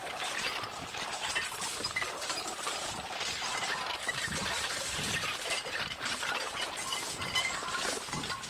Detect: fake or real fake